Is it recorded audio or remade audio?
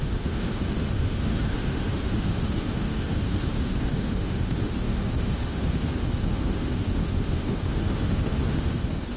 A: remade